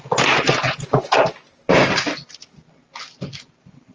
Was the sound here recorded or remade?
recorded